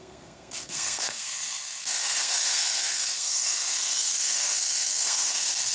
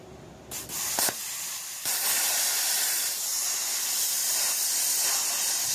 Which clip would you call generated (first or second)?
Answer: first